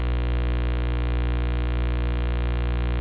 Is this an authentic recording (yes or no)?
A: yes